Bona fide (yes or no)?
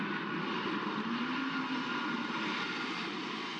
no